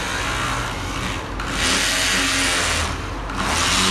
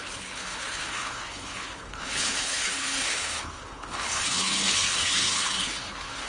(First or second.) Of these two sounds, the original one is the first